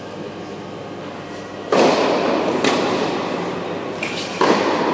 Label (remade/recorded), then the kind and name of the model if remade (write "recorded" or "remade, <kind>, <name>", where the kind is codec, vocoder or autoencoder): recorded